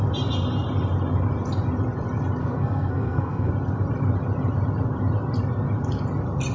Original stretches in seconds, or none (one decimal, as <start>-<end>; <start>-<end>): 0.0-2.4; 3.5-6.5